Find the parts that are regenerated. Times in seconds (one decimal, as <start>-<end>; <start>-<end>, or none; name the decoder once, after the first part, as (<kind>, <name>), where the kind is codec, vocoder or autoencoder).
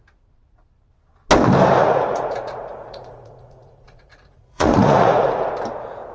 1.8-5.5 (vocoder, Vocos)